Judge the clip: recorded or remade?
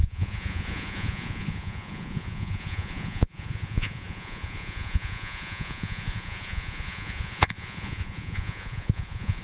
remade